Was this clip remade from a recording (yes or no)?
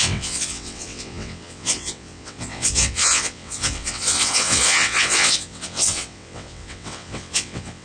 yes